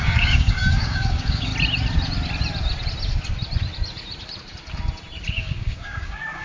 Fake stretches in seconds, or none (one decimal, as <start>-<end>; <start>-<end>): 0.0-1.5; 5.3-6.4

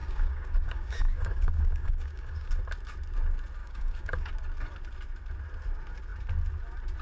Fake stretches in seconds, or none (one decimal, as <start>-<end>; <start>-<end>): 0.0-2.5; 3.6-4.3